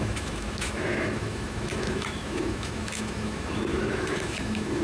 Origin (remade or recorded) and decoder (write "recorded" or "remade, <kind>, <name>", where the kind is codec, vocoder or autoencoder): remade, autoencoder, DAC-VAE